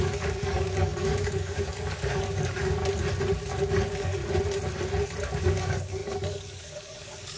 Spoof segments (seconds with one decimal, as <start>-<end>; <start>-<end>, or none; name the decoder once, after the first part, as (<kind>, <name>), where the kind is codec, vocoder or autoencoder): 0.0-2.8 (codec, DAC); 3.7-4.2; 5.4-7.4